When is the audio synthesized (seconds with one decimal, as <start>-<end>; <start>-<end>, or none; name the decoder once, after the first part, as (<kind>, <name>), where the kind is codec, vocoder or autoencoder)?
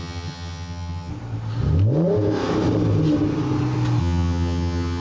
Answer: 0.0-1.1 (vocoder, HiFi-GAN); 4.0-5.0